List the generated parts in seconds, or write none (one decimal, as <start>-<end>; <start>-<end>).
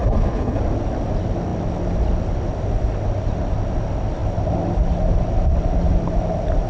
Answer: 0.0-0.6